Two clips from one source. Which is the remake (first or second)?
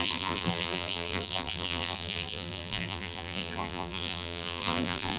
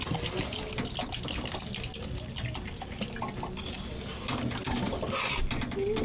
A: first